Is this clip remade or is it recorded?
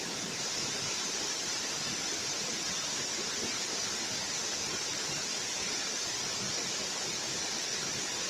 recorded